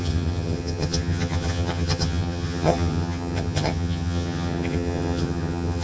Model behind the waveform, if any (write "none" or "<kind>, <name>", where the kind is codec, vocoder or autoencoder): vocoder, HiFi-GAN